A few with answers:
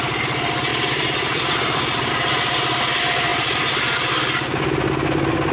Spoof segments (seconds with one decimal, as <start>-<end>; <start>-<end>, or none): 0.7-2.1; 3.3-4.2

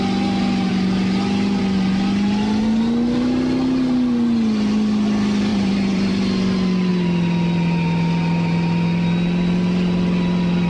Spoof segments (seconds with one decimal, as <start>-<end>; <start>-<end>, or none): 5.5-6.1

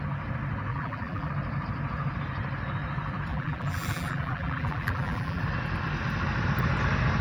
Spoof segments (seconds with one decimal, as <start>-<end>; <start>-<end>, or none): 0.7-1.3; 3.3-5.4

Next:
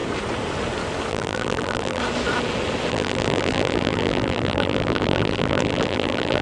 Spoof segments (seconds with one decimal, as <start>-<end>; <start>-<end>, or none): 1.1-2.0; 2.9-6.4

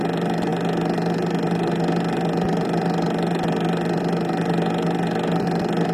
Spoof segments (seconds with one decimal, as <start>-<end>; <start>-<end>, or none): none

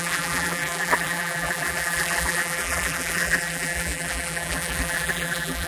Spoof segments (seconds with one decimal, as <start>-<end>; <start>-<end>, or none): 0.0-5.7

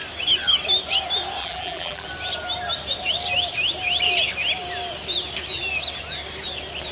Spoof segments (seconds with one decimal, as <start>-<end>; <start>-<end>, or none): 1.4-2.1